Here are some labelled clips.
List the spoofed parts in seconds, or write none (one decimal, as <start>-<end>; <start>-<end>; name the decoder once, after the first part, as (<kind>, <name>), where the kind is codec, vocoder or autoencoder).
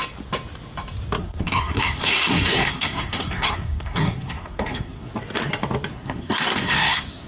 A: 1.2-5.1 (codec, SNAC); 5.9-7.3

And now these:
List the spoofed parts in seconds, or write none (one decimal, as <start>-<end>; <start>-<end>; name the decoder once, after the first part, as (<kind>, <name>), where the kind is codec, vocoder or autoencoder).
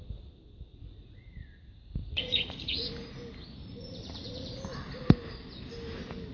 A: 0.7-1.3 (vocoder, Vocos); 2.0-2.9; 3.6-4.6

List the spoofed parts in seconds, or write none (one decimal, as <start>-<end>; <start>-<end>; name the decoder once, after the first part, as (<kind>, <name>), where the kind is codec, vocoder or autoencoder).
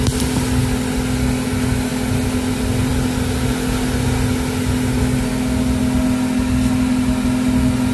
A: none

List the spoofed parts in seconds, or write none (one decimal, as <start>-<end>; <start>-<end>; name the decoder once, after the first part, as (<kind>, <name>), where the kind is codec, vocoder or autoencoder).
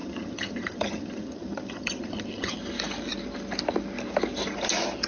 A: 0.0-2.6 (vocoder, HiFi-GAN)